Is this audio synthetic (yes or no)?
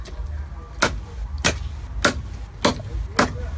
no